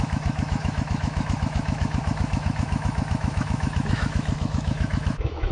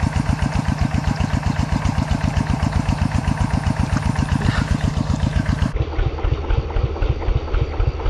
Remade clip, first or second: first